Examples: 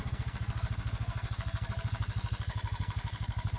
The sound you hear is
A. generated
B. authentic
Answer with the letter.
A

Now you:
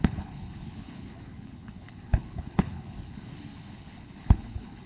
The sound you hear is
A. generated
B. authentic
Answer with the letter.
A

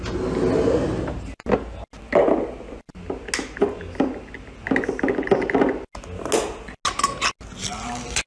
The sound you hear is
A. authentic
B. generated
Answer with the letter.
A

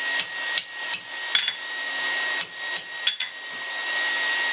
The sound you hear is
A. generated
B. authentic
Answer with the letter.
B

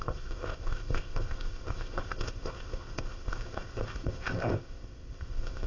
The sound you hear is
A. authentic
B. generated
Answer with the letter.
B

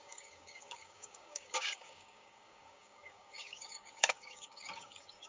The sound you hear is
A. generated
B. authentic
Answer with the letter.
A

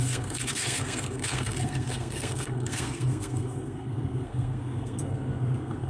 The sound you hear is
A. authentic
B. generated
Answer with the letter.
B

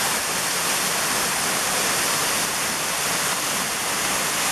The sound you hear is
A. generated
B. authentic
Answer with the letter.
B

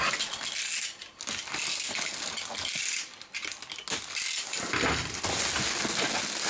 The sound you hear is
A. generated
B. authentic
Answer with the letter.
B